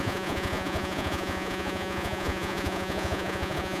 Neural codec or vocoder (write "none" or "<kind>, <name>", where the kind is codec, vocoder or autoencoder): vocoder, Vocos